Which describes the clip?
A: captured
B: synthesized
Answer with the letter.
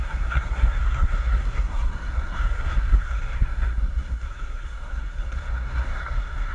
B